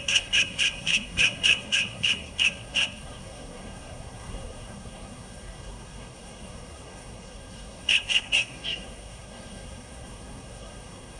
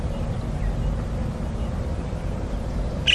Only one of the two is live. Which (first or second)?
second